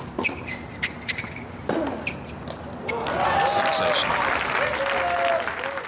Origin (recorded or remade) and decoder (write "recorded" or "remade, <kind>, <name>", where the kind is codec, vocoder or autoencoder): recorded